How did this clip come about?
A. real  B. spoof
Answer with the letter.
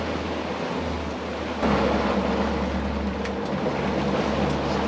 A